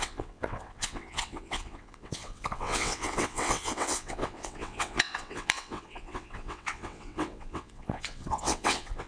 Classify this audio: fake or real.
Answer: fake